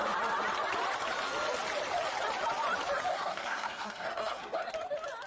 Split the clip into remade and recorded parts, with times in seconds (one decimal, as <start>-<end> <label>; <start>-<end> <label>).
0.0-3.1 recorded; 3.1-4.7 remade; 4.7-5.3 recorded